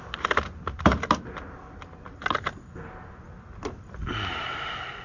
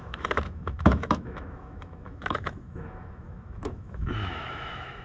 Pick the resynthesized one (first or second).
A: second